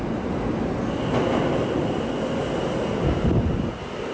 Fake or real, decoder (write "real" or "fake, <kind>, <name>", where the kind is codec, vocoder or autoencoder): real